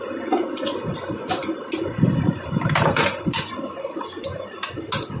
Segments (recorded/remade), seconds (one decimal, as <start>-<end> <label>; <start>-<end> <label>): 0.0-1.4 recorded; 1.4-4.5 remade; 4.5-5.2 recorded